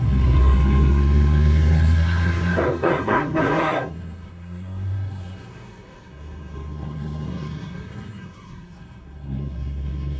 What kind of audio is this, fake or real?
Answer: fake